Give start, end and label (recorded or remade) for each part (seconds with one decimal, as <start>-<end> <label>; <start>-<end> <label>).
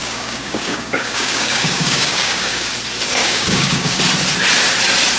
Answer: 0.0-2.7 remade; 2.7-3.2 recorded; 3.2-4.0 remade; 4.0-5.2 recorded